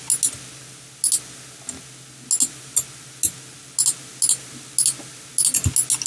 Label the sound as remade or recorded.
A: recorded